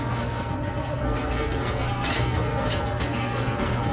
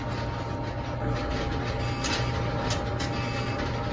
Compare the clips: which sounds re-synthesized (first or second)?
first